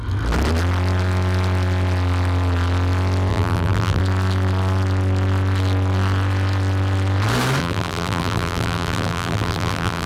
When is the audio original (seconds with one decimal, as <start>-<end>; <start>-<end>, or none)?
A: 0.0-3.3; 4.0-7.6